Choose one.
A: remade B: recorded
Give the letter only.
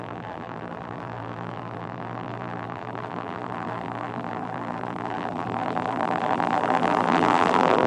A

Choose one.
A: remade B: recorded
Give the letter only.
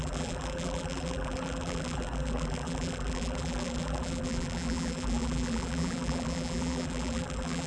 A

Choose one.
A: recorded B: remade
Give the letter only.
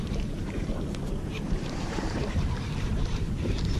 B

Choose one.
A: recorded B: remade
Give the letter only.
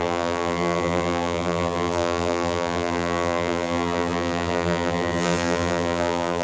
B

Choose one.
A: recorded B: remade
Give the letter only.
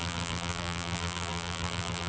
B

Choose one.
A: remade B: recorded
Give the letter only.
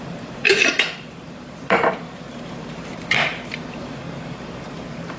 A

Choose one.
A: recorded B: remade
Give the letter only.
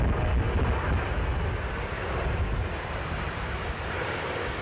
A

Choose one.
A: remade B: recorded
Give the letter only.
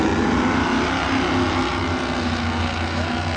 B